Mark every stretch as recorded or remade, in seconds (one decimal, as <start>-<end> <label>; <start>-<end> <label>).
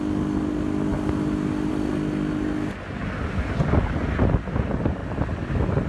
0.0-5.9 recorded